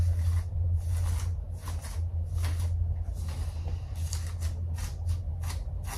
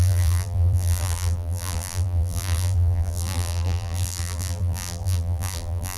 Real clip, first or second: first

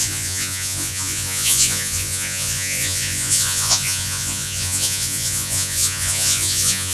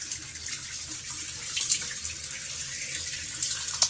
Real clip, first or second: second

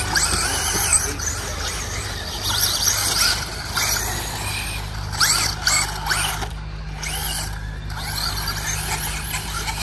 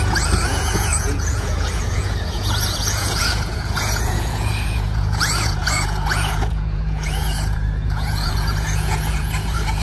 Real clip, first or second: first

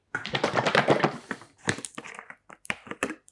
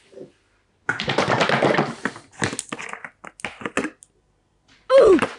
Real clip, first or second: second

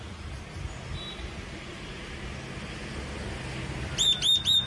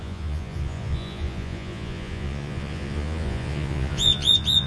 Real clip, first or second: first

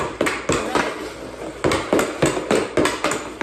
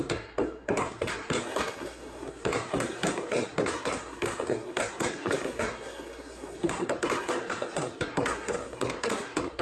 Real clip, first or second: first